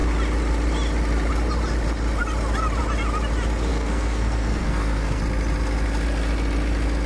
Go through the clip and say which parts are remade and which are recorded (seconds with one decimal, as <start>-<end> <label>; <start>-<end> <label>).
0.0-3.7 recorded; 3.7-5.2 remade; 5.2-7.1 recorded